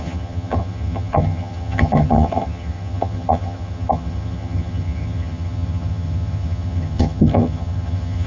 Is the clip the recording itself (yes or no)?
no